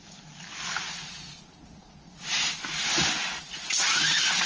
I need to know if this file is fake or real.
real